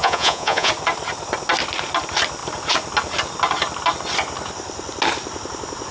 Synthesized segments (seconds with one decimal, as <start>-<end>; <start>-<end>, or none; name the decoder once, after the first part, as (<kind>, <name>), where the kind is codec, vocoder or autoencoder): 0.0-0.7 (vocoder, Vocos)